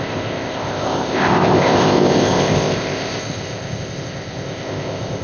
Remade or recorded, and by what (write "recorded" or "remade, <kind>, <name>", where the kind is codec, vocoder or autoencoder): remade, codec, ZipCodec